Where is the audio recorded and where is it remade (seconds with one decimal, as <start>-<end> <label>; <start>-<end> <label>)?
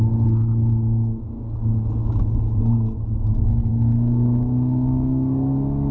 0.0-3.7 recorded; 3.7-5.9 remade